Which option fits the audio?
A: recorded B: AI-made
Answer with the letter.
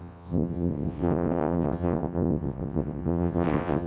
B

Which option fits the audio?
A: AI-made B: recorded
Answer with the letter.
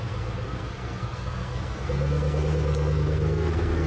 A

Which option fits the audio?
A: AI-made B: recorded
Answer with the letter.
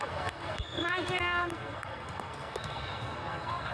A